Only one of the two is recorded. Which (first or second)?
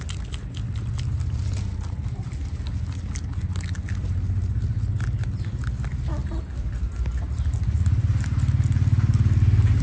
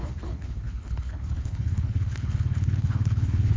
first